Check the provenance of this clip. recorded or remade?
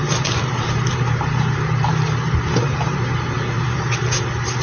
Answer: remade